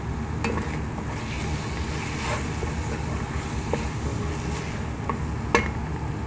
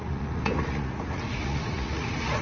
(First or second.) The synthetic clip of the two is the second